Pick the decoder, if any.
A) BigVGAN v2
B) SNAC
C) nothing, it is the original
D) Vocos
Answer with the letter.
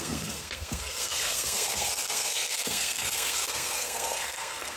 B